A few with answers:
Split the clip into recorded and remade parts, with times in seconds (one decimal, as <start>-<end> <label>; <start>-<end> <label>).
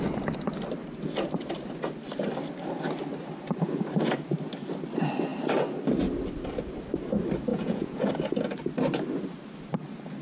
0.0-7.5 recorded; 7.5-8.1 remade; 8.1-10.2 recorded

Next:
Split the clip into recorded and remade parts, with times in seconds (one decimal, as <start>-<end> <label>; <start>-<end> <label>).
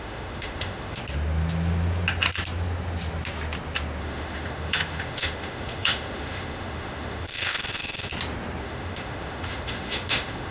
0.0-1.0 remade; 1.0-4.0 recorded; 4.0-8.1 remade; 8.1-8.6 recorded; 8.6-10.5 remade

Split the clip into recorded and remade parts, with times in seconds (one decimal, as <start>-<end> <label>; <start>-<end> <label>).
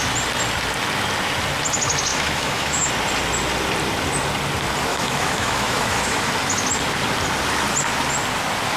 0.0-2.1 recorded; 2.1-2.9 remade; 2.9-4.9 recorded; 4.9-6.3 remade; 6.3-8.8 recorded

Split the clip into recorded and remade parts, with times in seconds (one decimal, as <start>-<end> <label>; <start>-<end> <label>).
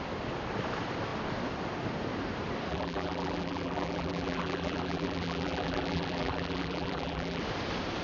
0.0-2.7 recorded; 2.7-7.4 remade; 7.4-8.0 recorded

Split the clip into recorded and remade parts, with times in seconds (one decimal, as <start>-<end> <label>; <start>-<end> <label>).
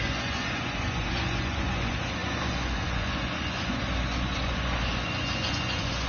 0.0-6.1 remade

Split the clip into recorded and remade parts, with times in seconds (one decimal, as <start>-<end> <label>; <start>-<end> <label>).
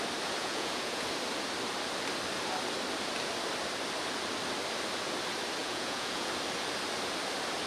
0.0-0.4 recorded; 0.4-1.0 remade; 1.0-5.6 recorded; 5.6-6.3 remade; 6.3-7.7 recorded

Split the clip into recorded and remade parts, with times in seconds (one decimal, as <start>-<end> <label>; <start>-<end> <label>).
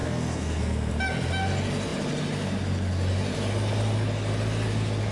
0.0-0.9 remade; 0.9-5.1 recorded